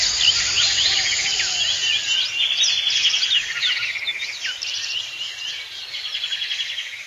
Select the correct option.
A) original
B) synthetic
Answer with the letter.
A